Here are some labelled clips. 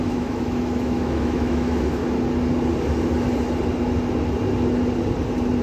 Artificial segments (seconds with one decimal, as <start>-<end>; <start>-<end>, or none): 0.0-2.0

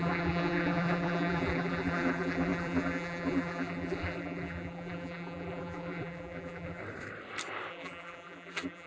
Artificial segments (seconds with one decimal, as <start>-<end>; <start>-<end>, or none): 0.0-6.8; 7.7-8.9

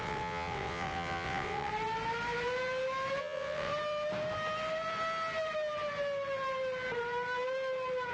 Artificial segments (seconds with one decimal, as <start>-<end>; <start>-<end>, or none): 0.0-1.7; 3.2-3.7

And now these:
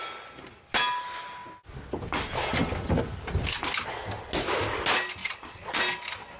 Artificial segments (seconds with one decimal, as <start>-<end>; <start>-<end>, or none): 5.2-5.8

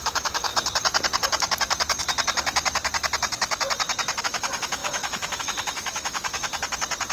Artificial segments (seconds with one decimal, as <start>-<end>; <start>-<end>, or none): 0.0-0.5; 4.2-6.5

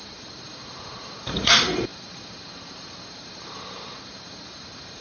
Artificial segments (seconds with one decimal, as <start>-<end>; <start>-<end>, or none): 0.0-5.0